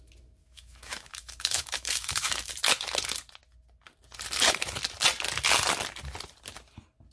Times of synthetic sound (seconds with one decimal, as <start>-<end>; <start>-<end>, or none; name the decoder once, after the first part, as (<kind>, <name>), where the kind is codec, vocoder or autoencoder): 0.4-2.5 (autoencoder, DAC-VAE)